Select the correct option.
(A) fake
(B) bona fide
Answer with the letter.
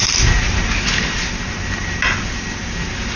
B